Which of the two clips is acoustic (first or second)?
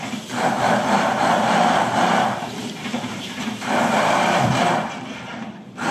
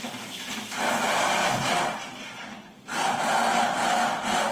second